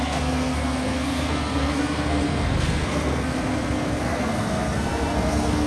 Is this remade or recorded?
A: remade